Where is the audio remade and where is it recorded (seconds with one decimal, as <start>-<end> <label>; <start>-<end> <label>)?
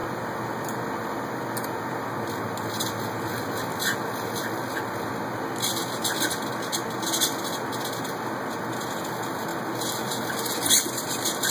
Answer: 0.0-11.5 recorded